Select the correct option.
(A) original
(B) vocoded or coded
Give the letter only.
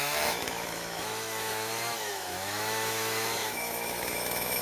B